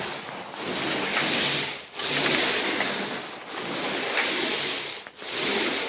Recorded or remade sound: recorded